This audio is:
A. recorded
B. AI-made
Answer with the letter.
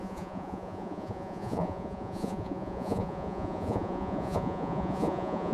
B